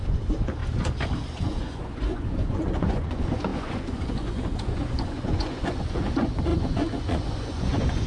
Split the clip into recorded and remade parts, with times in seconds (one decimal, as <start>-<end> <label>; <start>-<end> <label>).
0.0-0.6 remade; 0.6-1.2 recorded; 1.2-8.1 remade